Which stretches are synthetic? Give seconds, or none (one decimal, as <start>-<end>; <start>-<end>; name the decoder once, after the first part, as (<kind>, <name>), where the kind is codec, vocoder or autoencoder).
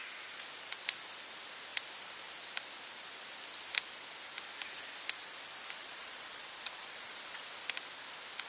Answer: 5.8-7.4 (vocoder, Vocos)